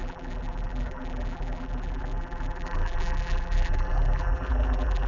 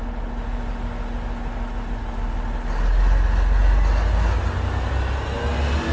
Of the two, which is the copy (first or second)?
first